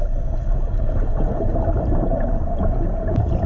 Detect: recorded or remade remade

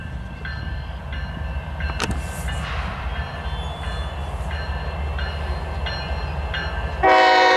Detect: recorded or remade recorded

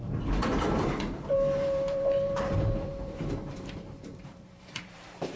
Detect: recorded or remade remade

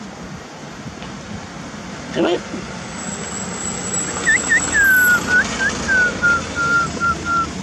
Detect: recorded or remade recorded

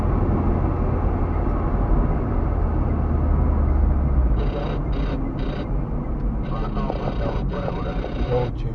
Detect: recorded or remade recorded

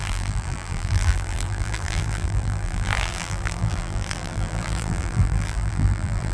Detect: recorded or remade remade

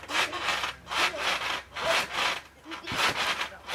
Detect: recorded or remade recorded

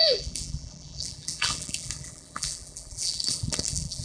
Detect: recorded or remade remade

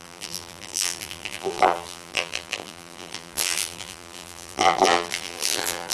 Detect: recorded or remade remade